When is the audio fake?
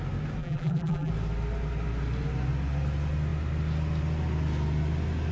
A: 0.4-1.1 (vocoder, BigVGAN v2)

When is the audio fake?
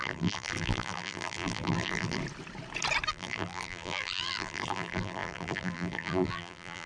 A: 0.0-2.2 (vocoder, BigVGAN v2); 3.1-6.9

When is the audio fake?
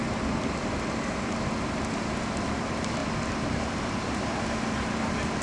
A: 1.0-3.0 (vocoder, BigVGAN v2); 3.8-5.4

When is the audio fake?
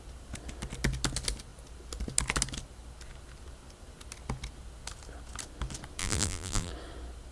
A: 6.0-6.7 (vocoder, BigVGAN v2)